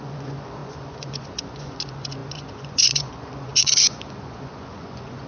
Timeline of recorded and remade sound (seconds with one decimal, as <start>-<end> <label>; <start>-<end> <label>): 0.0-5.3 remade

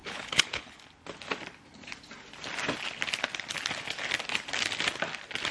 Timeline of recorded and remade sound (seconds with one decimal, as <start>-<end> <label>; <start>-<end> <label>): 0.0-0.8 remade; 0.8-5.5 recorded

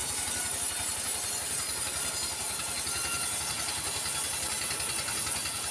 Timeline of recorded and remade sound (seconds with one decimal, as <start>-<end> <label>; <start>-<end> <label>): 0.0-5.7 recorded

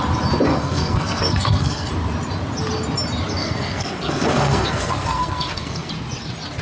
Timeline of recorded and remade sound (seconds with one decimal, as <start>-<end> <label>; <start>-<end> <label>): 0.0-0.5 recorded; 0.5-1.9 remade; 1.9-3.4 recorded; 3.4-5.9 remade; 5.9-6.6 recorded

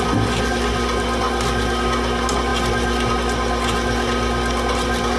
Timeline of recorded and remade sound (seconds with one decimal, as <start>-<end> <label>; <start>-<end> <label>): 0.0-5.2 recorded

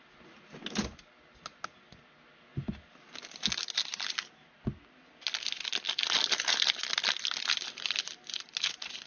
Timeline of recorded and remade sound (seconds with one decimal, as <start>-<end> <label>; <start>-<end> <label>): 0.0-9.1 recorded

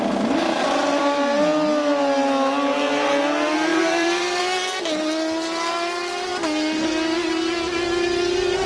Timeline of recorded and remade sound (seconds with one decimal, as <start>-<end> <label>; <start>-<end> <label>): 0.0-3.7 recorded; 3.7-4.4 remade; 4.4-8.7 recorded

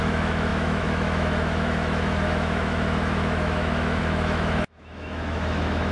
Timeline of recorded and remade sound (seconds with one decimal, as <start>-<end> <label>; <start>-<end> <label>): 0.0-5.9 remade